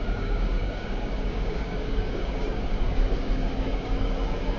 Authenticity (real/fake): fake